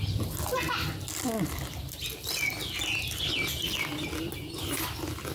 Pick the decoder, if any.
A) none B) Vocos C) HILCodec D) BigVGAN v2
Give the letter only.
A